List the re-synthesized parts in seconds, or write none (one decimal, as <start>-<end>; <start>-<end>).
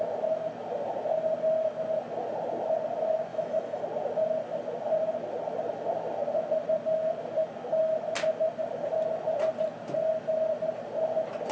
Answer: 3.3-3.8